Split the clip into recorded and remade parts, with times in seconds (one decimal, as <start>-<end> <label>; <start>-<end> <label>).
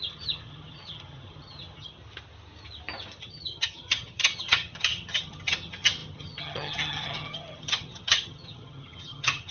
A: 0.0-2.0 remade; 2.0-3.2 recorded; 3.2-9.5 remade